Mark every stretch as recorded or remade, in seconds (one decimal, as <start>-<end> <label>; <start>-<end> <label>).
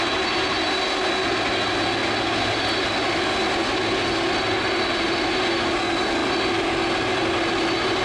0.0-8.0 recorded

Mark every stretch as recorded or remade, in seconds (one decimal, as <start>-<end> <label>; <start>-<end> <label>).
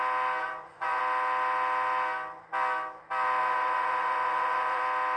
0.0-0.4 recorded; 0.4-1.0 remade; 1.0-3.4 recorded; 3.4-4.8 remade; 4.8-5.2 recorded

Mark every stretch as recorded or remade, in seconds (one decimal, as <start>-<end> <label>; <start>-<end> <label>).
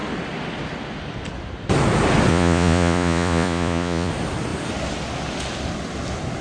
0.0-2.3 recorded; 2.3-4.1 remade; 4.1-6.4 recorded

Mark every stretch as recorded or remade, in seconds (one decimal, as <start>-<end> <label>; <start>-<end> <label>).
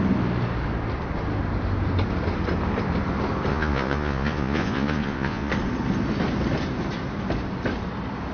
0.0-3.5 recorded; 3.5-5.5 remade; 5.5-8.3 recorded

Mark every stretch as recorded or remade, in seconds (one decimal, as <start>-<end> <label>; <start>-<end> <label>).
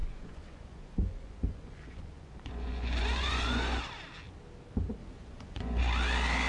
0.0-3.8 remade; 3.8-5.0 recorded; 5.0-5.8 remade; 5.8-6.5 recorded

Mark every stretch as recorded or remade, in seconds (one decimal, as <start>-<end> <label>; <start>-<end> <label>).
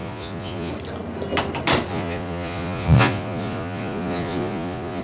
0.0-0.7 remade; 0.7-1.9 recorded; 1.9-5.0 remade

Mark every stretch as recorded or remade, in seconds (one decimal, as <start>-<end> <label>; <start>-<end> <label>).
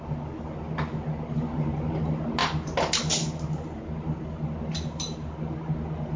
0.0-6.2 recorded